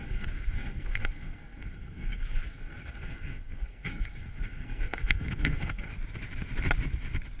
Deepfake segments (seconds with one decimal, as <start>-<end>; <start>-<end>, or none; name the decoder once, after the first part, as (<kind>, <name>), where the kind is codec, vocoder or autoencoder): 0.0-5.9 (codec, SNAC)